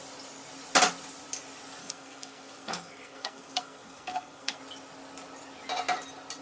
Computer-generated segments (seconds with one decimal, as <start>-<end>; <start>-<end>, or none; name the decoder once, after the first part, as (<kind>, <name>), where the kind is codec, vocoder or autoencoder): 1.8-4.6 (codec, SNAC)